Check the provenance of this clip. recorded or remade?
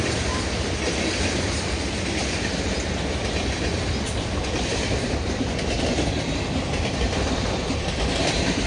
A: remade